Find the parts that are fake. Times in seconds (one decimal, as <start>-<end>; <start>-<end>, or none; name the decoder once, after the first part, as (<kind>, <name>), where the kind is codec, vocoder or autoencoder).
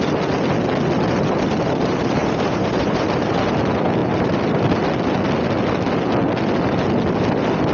2.2-3.0 (vocoder, BigVGAN v2)